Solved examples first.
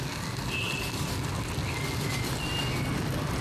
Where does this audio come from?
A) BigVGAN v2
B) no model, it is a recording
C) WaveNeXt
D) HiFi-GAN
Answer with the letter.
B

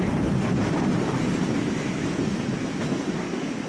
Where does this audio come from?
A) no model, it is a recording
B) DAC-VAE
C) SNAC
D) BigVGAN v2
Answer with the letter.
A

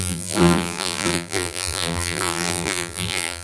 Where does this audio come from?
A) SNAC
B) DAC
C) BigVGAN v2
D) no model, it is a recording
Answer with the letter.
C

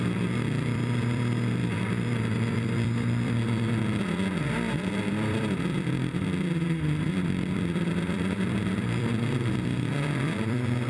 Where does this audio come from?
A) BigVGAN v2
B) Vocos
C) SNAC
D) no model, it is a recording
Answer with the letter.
A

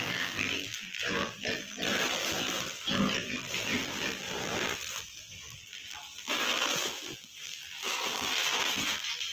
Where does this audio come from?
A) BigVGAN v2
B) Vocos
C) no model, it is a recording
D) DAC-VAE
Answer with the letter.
A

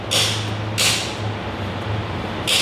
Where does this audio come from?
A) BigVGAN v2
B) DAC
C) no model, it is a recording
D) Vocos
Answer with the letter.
C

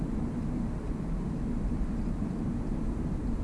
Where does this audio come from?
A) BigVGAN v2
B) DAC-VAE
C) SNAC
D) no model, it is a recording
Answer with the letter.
A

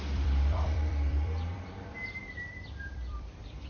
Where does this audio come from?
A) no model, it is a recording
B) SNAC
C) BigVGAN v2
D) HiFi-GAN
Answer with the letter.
C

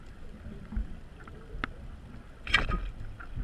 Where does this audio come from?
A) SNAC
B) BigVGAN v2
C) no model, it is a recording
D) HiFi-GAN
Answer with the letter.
C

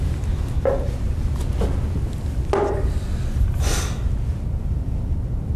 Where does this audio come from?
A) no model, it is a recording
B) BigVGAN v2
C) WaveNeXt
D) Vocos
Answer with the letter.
A